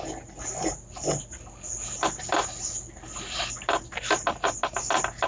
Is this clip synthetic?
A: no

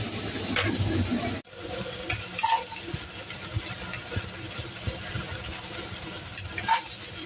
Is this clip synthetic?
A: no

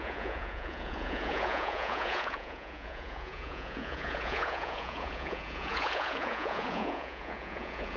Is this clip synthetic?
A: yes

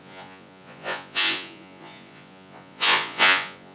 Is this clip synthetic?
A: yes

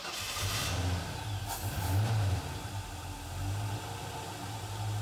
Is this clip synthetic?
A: no